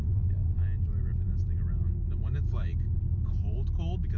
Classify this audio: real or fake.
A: real